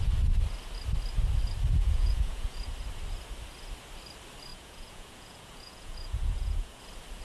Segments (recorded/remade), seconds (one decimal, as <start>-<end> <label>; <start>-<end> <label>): 0.0-1.8 recorded; 1.8-2.6 remade; 2.6-4.5 recorded; 4.5-6.8 remade; 6.8-7.2 recorded